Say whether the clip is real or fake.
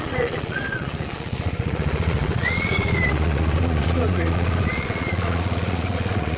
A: fake